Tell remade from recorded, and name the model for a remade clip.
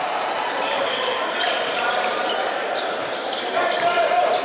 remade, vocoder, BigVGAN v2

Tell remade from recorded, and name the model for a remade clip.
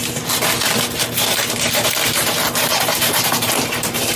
recorded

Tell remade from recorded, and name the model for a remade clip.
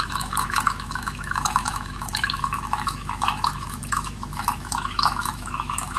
remade, autoencoder, DAC-VAE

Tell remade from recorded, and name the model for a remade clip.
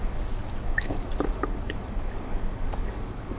remade, codec, DAC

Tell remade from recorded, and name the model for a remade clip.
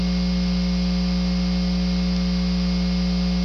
recorded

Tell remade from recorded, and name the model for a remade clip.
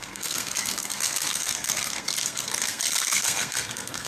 remade, codec, SNAC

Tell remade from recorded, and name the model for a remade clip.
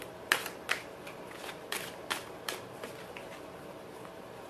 recorded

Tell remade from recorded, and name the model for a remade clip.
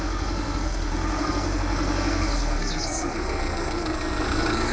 remade, codec, SNAC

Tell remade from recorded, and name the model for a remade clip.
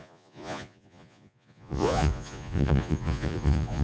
remade, vocoder, Vocos